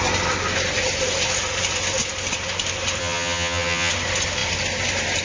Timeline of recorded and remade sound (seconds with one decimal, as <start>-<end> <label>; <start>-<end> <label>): 0.0-3.0 recorded; 3.0-3.9 remade; 3.9-5.2 recorded